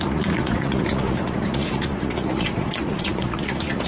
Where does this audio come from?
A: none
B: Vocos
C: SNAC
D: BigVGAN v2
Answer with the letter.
B